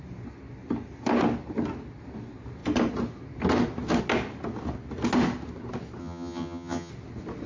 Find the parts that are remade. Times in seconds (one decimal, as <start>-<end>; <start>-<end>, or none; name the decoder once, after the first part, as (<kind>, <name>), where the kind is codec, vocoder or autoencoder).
6.0-6.9 (vocoder, HiFi-GAN)